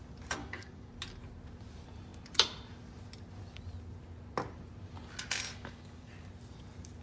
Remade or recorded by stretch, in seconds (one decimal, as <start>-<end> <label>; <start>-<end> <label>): 0.0-0.4 recorded; 0.4-0.9 remade; 0.9-5.5 recorded; 5.5-6.1 remade; 6.1-7.0 recorded